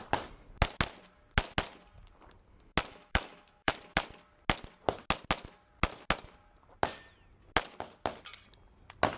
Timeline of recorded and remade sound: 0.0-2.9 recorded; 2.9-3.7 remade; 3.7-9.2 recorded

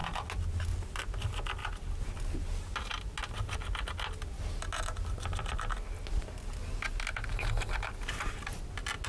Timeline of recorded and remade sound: 0.0-9.1 recorded

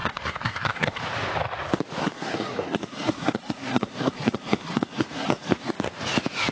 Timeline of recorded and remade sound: 0.0-1.0 remade; 1.0-2.0 recorded; 2.0-5.7 remade; 5.7-6.5 recorded

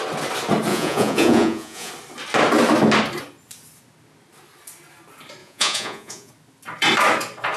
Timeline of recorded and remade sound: 0.0-0.7 recorded; 0.7-1.9 remade; 1.9-5.4 recorded; 5.4-6.3 remade; 6.3-7.6 recorded

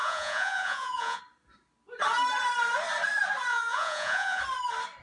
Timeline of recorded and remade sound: 0.0-1.2 remade; 1.2-3.5 recorded; 3.5-4.4 remade; 4.4-5.0 recorded